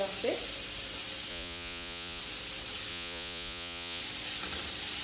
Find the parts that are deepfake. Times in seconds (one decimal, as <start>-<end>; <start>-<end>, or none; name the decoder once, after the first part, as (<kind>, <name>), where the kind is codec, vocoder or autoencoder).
1.3-2.2 (vocoder, Vocos); 2.9-4.0